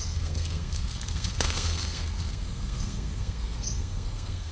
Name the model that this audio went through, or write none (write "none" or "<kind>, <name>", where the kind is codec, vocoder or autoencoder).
codec, SNAC